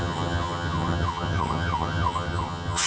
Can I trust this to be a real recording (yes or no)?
no